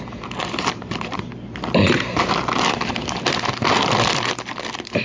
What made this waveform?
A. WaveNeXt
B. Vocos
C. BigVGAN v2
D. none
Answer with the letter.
C